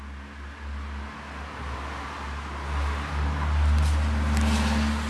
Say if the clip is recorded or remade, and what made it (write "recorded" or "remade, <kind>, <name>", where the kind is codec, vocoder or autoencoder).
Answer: recorded